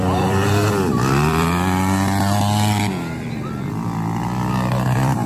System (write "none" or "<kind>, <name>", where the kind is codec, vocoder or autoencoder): vocoder, BigVGAN v2